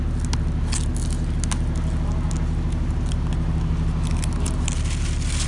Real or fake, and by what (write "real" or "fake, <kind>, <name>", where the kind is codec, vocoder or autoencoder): real